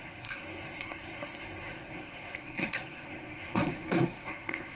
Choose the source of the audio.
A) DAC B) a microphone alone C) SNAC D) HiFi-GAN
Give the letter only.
C